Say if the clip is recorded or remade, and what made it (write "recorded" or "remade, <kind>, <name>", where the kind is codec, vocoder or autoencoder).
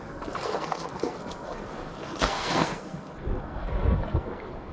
remade, codec, SNAC